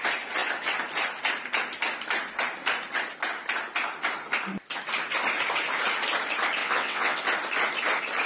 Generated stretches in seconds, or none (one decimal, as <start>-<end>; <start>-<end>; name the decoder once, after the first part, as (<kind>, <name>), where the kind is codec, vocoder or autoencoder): 6.6-7.2 (vocoder, WaveNeXt)